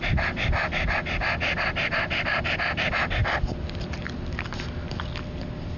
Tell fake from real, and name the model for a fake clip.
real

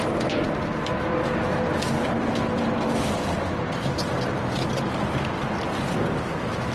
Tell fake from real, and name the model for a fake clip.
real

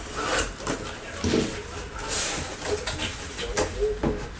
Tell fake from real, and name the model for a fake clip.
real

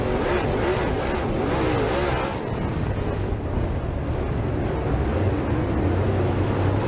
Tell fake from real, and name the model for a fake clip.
real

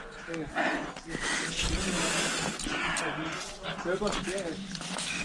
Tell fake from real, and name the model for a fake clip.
real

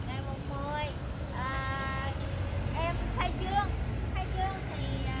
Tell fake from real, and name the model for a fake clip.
real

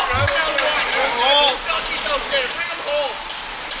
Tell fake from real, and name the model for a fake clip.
real